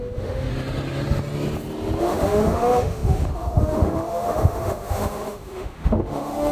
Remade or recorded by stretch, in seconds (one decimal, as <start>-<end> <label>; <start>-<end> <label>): 0.0-0.5 remade; 0.5-2.0 recorded; 2.0-6.5 remade